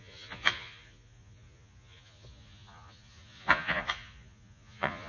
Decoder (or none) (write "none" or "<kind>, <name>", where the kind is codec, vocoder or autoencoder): vocoder, Vocos